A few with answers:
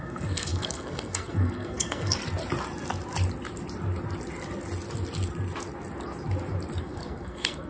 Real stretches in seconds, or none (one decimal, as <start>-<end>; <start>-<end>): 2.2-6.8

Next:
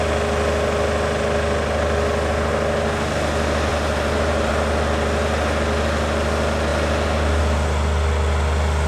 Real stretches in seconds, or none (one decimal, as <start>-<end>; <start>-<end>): 0.0-3.7; 4.5-8.9

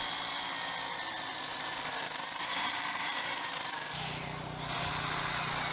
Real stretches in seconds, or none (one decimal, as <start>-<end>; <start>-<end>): 0.0-1.5; 4.9-5.7

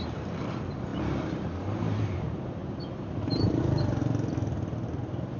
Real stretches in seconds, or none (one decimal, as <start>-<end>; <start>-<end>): 4.0-5.4

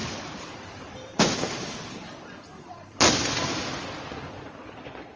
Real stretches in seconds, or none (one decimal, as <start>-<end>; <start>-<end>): 3.1-5.2

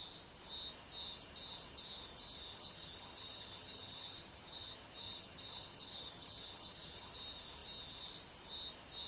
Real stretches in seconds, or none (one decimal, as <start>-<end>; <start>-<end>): 0.0-2.5; 7.1-9.1

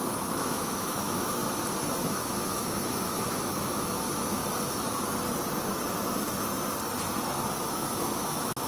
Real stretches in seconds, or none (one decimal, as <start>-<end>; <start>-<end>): 1.4-2.1; 4.4-7.7

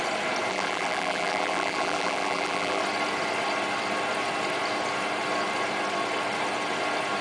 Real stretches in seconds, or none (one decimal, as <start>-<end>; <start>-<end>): 0.0-0.5; 2.8-7.2